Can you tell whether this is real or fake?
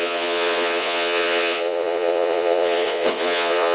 fake